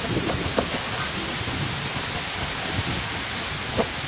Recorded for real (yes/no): yes